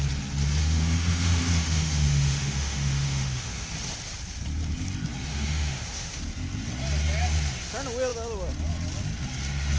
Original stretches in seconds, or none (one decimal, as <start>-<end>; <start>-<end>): 0.0-0.6; 3.7-5.3; 6.2-9.8